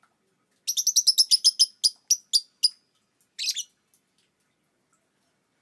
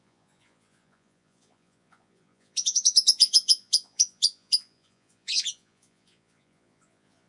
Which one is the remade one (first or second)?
second